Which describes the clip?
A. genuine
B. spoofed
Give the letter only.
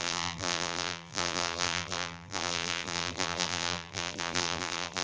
B